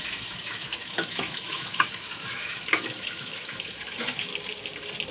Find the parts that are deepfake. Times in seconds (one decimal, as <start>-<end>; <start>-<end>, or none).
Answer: 0.0-4.3